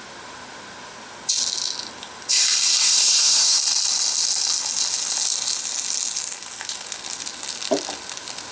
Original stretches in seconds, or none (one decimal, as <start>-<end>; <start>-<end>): 0.0-2.8; 3.6-8.5